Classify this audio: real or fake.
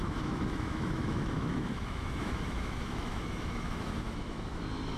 fake